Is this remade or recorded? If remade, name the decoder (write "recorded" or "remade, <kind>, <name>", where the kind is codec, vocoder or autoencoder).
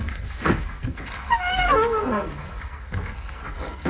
remade, codec, SNAC